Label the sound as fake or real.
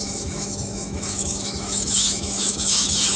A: fake